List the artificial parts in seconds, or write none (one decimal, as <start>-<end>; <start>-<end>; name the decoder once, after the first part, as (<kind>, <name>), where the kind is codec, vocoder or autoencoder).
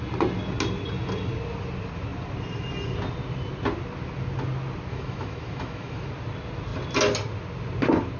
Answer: 4.9-6.1 (autoencoder, DAC-VAE)